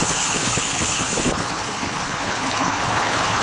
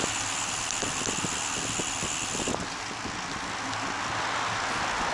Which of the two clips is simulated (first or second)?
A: first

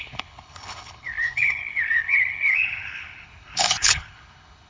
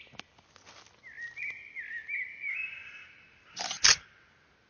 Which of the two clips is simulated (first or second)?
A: first